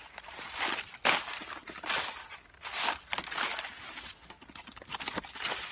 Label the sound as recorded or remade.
recorded